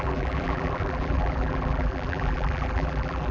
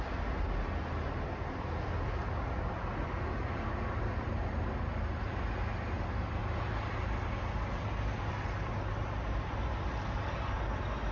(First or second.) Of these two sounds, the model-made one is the first